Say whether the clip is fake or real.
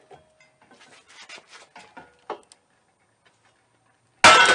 real